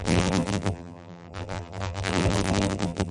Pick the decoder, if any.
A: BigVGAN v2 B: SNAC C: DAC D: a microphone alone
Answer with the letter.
A